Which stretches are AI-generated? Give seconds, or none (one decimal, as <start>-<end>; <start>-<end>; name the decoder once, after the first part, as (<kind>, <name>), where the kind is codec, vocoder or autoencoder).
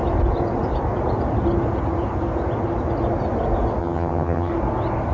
3.8-4.5 (vocoder, HiFi-GAN)